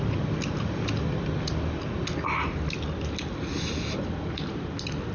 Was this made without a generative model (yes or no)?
yes